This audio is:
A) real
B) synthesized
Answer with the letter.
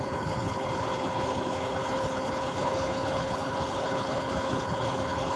B